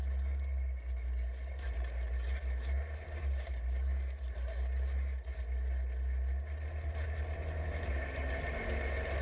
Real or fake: real